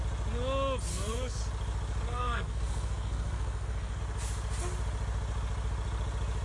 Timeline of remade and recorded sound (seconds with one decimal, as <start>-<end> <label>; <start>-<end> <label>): 0.0-0.9 recorded; 0.9-1.4 remade; 1.4-2.1 recorded; 2.1-4.0 remade; 4.0-6.4 recorded